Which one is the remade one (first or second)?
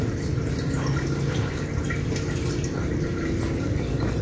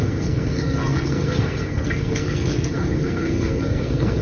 second